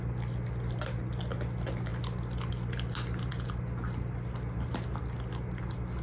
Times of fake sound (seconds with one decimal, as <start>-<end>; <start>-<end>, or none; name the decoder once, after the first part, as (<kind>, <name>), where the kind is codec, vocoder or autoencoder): none